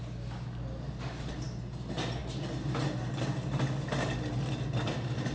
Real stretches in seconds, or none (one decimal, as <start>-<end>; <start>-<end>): 0.0-5.3